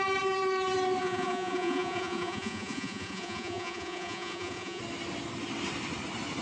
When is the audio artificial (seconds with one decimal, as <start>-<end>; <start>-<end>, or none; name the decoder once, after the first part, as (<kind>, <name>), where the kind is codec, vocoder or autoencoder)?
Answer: 1.0-4.8 (vocoder, Vocos)